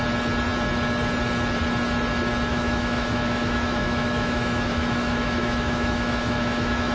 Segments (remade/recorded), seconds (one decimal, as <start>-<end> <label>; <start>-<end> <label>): 0.0-2.5 recorded; 2.5-6.9 remade